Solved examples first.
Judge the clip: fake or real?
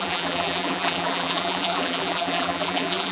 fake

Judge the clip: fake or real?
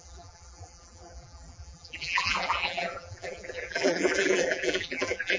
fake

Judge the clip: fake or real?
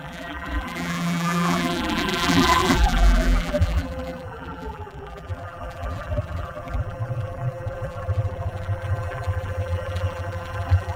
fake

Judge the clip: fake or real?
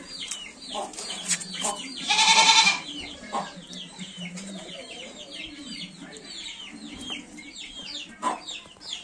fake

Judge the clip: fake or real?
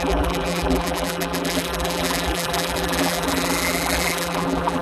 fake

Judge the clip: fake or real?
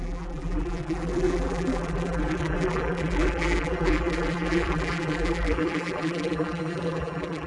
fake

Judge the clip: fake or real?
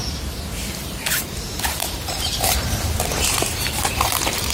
fake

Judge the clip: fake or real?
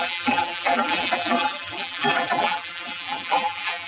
fake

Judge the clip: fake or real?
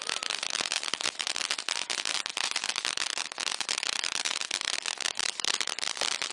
fake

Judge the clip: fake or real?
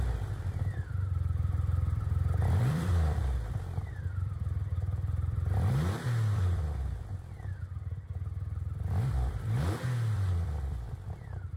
fake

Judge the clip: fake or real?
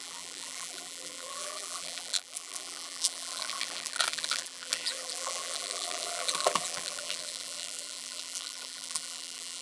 fake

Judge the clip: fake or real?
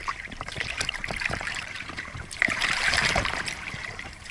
fake